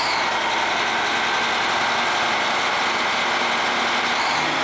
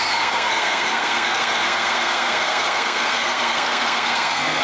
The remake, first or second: second